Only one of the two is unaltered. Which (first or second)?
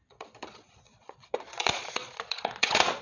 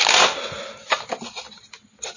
second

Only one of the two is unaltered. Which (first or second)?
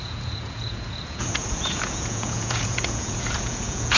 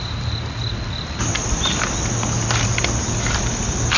second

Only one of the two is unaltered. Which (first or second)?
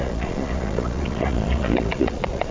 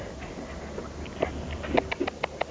second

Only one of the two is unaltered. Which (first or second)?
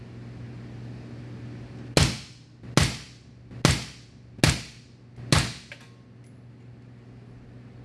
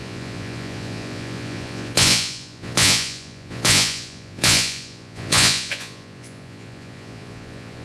first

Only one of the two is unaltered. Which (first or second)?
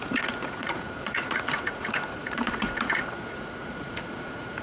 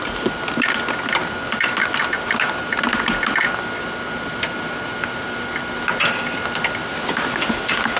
second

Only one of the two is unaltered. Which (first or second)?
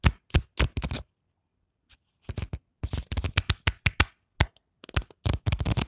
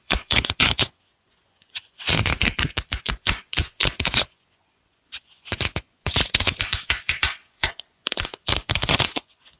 first